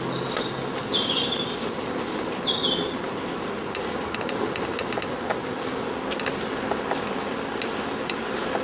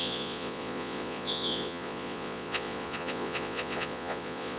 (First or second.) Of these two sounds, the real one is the first